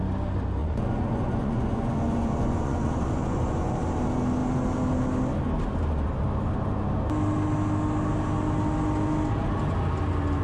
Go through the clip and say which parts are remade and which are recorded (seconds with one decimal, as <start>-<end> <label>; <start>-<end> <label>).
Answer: 0.0-0.6 recorded; 0.6-3.7 remade; 3.7-10.4 recorded